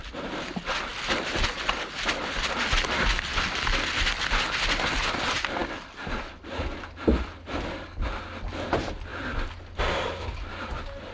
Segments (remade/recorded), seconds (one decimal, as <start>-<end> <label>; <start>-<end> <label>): 0.0-11.1 recorded